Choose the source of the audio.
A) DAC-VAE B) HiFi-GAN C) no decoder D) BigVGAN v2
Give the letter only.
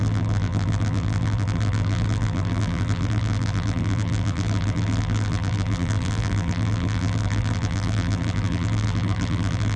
D